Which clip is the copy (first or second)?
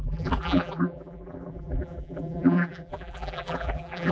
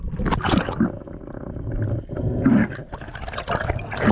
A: first